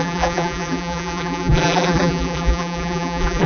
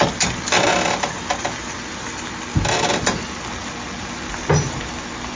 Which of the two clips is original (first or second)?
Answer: second